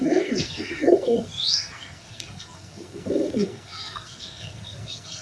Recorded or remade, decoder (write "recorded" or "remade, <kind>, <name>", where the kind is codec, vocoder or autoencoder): remade, codec, SNAC